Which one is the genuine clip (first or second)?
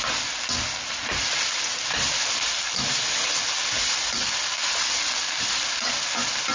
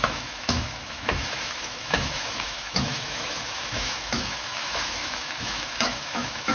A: first